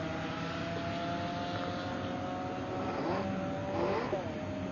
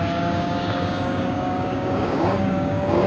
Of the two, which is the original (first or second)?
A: first